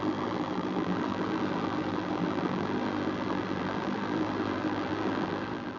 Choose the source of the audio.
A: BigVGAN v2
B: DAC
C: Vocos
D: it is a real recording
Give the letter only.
A